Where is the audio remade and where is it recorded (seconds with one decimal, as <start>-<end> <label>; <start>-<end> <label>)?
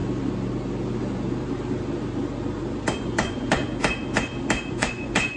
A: 0.0-3.0 recorded; 3.0-3.6 remade; 3.6-4.7 recorded; 4.7-5.4 remade